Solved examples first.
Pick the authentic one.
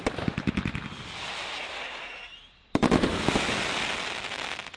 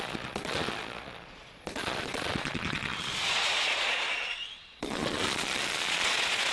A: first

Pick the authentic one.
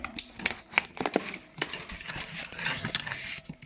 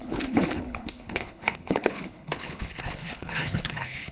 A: first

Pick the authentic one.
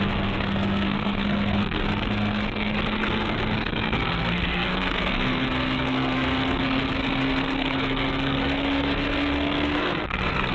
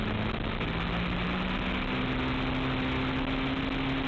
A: second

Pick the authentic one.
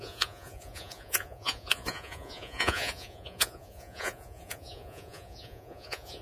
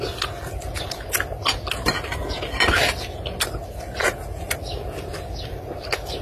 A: second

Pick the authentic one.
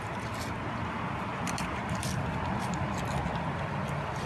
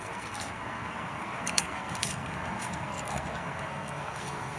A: first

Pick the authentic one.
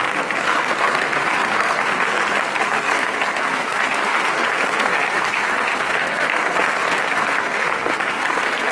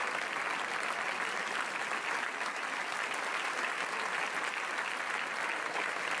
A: second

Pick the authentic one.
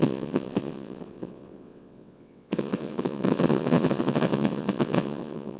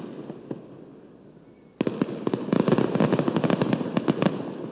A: second